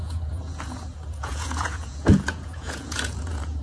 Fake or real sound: fake